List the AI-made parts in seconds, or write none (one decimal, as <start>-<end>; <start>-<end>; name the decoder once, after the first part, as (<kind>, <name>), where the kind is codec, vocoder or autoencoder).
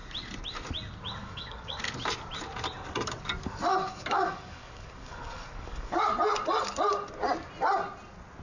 1.2-1.8 (codec, DAC); 3.7-6.1